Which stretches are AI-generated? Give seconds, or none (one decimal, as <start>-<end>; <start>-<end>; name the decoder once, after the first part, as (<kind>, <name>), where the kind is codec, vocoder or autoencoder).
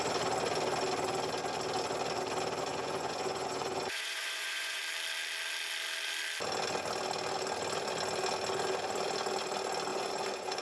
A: 2.7-4.8 (vocoder, Vocos); 9.9-10.6